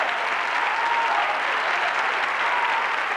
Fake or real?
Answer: real